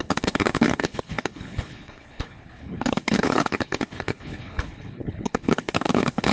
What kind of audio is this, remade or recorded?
remade